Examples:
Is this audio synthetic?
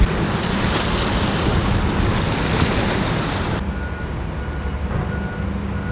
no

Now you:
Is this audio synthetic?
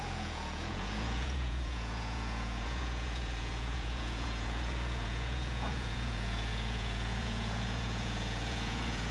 yes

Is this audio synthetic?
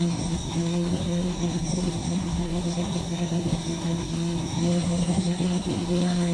yes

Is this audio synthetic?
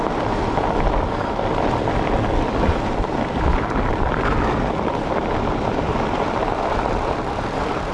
no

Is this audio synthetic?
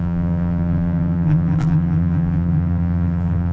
yes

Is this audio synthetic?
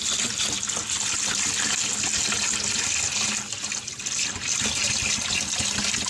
no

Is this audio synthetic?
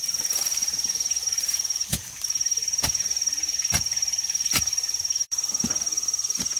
yes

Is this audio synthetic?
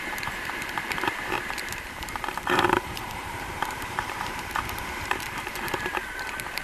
yes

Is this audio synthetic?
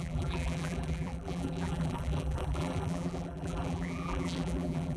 yes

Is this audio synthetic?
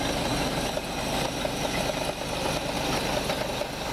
no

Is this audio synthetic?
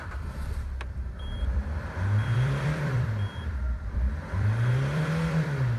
yes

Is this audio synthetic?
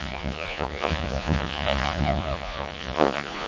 yes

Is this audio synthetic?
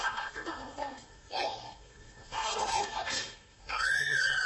yes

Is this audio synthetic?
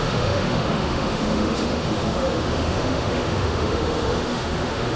yes